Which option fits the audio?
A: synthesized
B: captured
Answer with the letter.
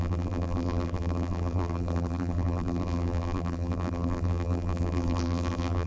A